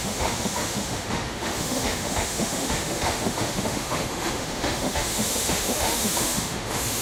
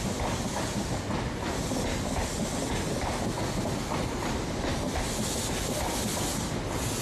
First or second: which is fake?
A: first